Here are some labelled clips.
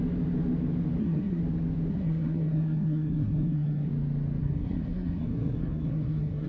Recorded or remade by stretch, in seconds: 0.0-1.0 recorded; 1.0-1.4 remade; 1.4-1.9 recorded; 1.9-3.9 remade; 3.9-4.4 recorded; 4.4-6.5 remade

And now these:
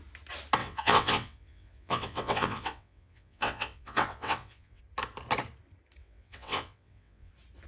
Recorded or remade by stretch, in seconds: 0.0-0.6 recorded; 0.6-4.8 remade; 4.8-6.0 recorded; 6.0-7.3 remade; 7.3-7.7 recorded